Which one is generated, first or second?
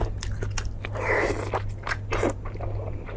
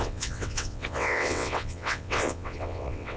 second